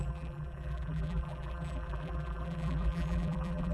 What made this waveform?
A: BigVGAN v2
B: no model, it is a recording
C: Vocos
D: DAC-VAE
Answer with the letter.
A